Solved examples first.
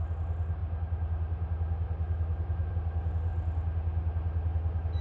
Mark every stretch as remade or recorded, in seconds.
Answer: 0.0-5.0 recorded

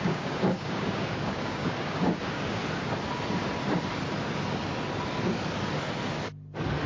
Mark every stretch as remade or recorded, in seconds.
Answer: 0.0-2.6 remade; 2.6-6.9 recorded

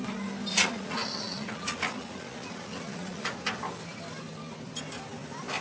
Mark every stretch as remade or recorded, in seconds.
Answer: 0.0-0.5 recorded; 0.5-3.3 remade; 3.3-5.6 recorded